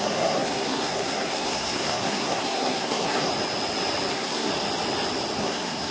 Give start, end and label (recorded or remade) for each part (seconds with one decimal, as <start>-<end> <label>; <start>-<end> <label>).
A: 0.0-3.3 remade; 3.3-4.1 recorded; 4.1-4.5 remade; 4.5-5.4 recorded; 5.4-5.9 remade